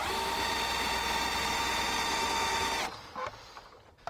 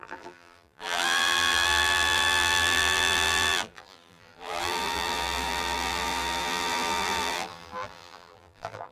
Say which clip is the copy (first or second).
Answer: second